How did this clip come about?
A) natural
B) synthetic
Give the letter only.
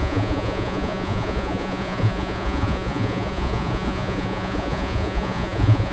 B